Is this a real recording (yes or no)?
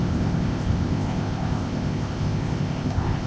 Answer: no